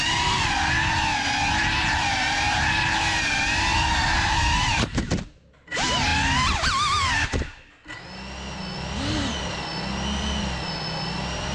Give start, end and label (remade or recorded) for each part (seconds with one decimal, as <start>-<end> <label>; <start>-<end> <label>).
0.0-1.6 recorded; 1.6-5.2 remade; 5.2-11.5 recorded